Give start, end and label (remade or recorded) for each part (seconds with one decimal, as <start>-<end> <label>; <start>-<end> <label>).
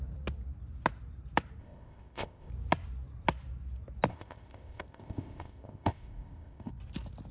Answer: 0.0-1.6 recorded; 1.6-2.5 remade; 2.5-4.1 recorded; 4.1-6.7 remade; 6.7-7.3 recorded